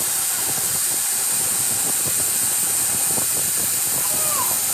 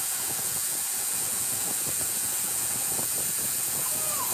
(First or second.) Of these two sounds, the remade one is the second